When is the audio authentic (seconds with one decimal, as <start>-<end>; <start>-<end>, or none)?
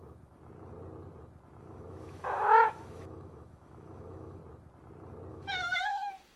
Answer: 0.4-1.6; 4.4-5.3